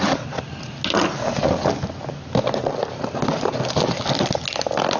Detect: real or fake real